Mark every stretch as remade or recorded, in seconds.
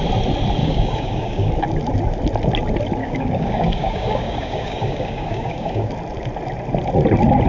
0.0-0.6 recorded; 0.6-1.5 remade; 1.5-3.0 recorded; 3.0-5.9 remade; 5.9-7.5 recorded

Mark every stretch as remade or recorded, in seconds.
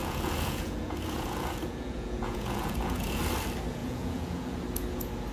0.0-3.2 remade; 3.2-3.8 recorded; 3.8-4.6 remade; 4.6-5.3 recorded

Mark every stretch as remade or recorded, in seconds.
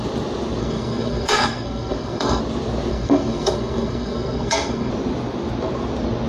0.0-0.6 recorded; 0.6-2.4 remade; 2.4-2.9 recorded; 2.9-4.9 remade; 4.9-6.3 recorded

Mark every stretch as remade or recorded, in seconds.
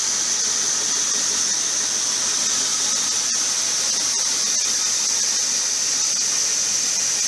0.0-7.3 recorded